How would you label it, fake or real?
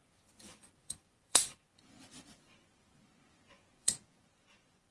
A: fake